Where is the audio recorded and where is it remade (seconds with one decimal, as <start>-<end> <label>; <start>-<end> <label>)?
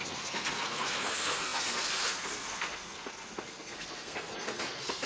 0.0-5.1 remade